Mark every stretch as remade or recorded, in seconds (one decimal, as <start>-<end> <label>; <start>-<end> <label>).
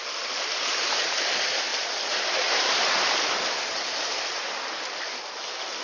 0.0-5.8 recorded